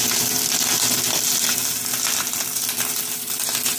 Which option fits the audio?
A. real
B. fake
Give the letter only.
A